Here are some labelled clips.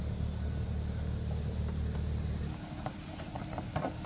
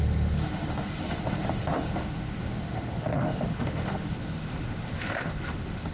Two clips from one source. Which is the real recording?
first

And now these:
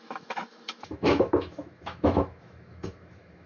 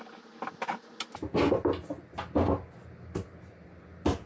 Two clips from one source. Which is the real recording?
second